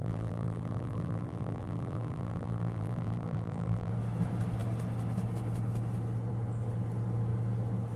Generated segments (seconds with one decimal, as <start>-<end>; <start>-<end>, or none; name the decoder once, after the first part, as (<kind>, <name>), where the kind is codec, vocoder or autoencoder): 0.0-3.9 (vocoder, BigVGAN v2)